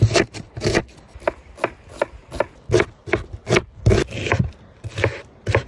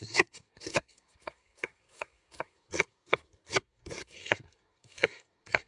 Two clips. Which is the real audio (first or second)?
first